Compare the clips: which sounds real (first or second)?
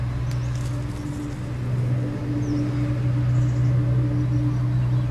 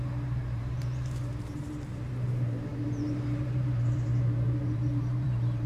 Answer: first